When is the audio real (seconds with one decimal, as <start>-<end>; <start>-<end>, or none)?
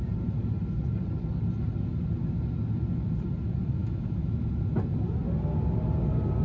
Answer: 0.0-3.8; 4.4-6.4